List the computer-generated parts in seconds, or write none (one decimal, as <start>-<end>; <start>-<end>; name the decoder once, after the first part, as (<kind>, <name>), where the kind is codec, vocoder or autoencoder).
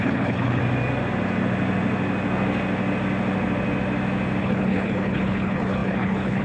0.0-0.6 (codec, HILCodec); 4.4-6.4